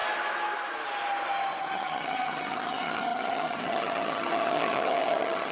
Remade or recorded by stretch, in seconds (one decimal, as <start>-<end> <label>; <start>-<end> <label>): 0.0-1.6 recorded; 1.6-5.5 remade